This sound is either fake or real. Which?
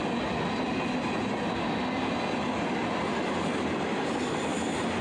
real